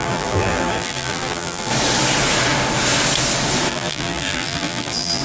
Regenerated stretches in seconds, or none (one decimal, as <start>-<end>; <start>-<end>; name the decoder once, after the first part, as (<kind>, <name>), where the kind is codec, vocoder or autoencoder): 0.0-1.7 (vocoder, BigVGAN v2); 3.7-5.2